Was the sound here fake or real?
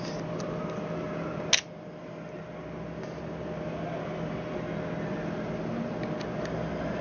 real